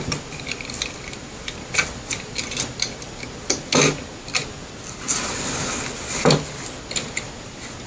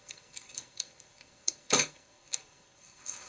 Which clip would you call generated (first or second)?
second